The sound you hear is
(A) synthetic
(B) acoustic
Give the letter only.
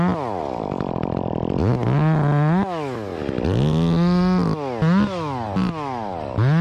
B